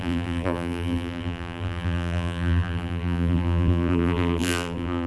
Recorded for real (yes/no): no